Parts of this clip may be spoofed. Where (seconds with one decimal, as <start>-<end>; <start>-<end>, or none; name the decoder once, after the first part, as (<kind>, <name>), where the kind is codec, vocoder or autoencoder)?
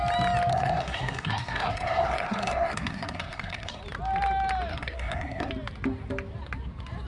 0.5-3.8 (codec, SNAC); 4.7-5.5